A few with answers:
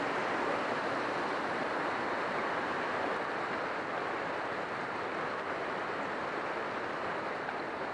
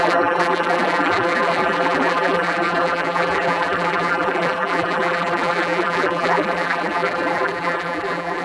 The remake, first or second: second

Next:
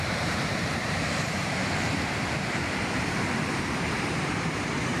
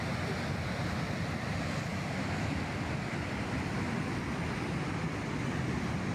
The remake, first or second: first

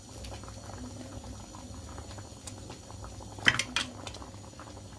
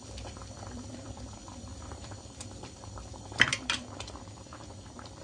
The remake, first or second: second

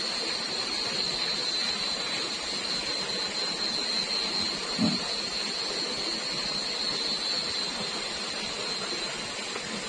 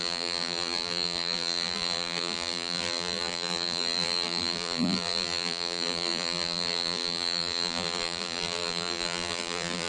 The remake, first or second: second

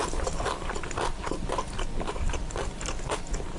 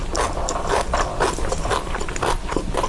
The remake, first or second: first